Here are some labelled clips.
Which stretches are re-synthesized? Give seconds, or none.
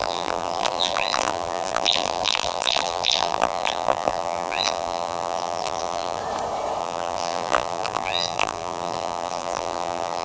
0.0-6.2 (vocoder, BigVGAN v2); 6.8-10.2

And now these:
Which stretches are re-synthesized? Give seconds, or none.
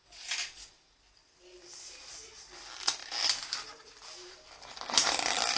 1.2-1.9 (vocoder, BigVGAN v2); 3.0-5.6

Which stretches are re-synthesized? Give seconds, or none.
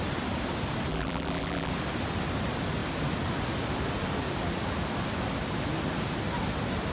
0.9-1.7 (vocoder, BigVGAN v2)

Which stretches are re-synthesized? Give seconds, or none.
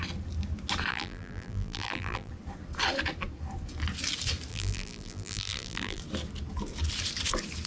0.9-2.3 (vocoder, BigVGAN v2); 4.5-6.0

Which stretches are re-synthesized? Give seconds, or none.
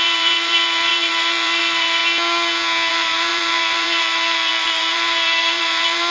0.0-2.0 (vocoder, BigVGAN v2); 2.9-6.1